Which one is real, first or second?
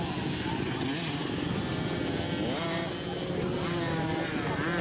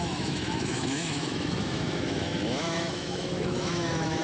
first